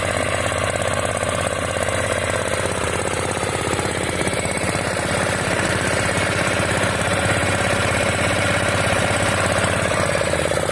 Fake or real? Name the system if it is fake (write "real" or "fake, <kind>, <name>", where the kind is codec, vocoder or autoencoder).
fake, vocoder, BigVGAN v2